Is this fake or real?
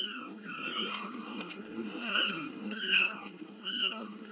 fake